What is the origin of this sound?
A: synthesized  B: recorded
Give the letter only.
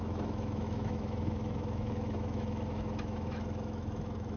A